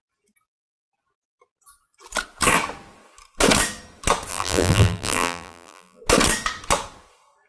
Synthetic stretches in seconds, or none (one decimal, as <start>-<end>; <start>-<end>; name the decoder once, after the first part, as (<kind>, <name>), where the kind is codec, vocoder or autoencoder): 4.3-6.0 (vocoder, BigVGAN v2)